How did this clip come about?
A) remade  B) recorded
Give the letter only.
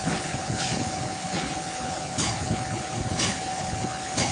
A